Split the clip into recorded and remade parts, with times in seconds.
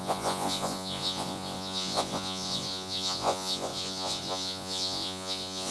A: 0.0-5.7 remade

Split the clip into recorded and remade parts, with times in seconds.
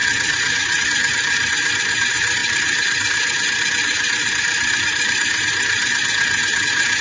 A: 0.0-0.8 remade; 0.8-7.0 recorded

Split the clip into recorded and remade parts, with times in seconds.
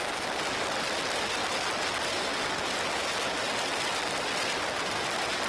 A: 0.0-5.5 recorded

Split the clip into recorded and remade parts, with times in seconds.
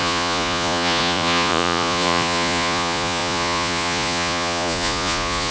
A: 0.0-5.5 remade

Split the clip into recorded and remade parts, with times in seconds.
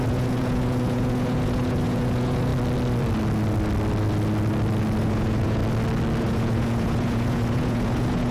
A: 0.0-2.5 remade; 2.5-5.0 recorded; 5.0-5.6 remade; 5.6-6.2 recorded; 6.2-8.3 remade